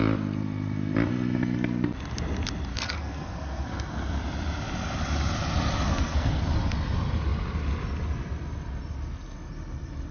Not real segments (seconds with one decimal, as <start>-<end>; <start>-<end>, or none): 2.7-4.2; 5.9-6.4